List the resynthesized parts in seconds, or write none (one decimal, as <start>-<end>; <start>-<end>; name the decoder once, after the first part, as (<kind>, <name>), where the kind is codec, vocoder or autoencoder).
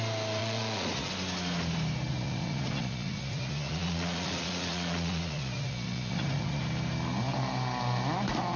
0.4-1.1 (vocoder, Vocos); 2.1-6.6